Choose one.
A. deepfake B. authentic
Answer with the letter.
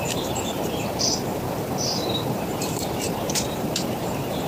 A